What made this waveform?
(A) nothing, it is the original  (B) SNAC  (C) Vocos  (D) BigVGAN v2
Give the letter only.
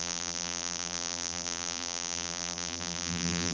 D